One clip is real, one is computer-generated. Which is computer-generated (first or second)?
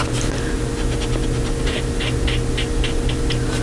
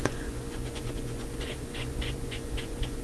second